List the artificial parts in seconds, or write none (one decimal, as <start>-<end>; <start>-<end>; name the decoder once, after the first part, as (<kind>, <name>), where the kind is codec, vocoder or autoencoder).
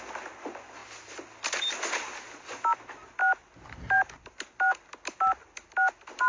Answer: none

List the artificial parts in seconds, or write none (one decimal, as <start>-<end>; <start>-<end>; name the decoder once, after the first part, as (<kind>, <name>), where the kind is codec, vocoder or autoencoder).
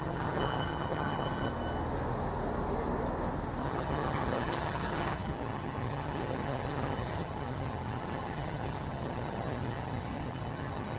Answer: 0.0-1.5 (vocoder, HiFi-GAN); 3.6-11.0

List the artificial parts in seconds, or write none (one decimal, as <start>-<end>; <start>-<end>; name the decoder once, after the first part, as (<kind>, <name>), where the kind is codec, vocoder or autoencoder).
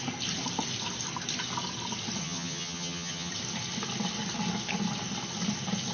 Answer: 2.2-3.3 (vocoder, HiFi-GAN)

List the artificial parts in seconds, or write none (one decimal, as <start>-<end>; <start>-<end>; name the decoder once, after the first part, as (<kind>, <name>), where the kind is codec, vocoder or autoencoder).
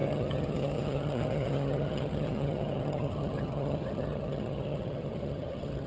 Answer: 0.0-5.9 (vocoder, HiFi-GAN)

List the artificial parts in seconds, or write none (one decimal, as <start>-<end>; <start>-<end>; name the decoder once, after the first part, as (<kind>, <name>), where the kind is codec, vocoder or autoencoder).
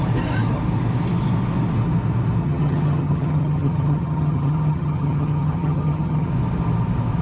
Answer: 2.4-6.3 (vocoder, HiFi-GAN)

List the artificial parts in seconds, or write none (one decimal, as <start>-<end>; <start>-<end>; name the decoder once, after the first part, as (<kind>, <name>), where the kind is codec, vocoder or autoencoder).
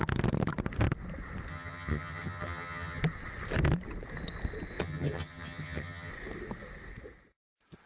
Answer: 1.5-3.0 (vocoder, HiFi-GAN); 4.8-6.1